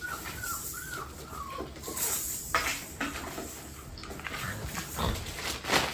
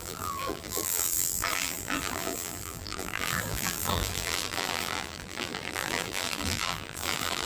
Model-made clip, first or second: second